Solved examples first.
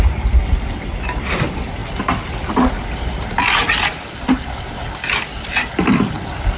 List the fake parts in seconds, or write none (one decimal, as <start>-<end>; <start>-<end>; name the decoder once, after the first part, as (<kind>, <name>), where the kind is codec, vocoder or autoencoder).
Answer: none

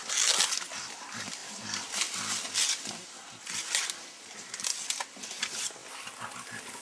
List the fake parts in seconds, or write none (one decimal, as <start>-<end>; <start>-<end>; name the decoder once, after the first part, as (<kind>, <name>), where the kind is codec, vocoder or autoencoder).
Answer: none

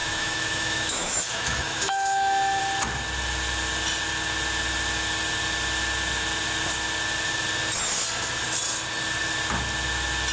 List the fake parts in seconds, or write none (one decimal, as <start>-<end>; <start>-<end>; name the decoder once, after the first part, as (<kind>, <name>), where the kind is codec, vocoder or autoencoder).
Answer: 0.0-2.6 (autoencoder, DAC-VAE)

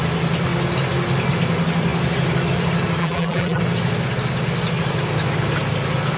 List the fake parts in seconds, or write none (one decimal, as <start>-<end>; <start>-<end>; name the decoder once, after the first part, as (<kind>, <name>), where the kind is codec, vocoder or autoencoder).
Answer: 3.0-3.6 (vocoder, BigVGAN v2)

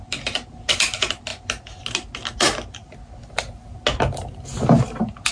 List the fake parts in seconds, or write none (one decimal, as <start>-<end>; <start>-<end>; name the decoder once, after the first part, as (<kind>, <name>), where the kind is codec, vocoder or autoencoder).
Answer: none